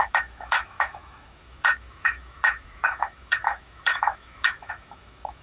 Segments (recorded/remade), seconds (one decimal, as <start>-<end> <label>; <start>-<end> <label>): 0.0-5.4 remade